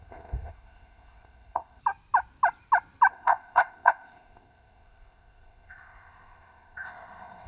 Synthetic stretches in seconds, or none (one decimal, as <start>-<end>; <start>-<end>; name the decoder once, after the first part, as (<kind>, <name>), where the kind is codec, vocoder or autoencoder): 0.0-1.8 (codec, ZipCodec); 3.1-7.5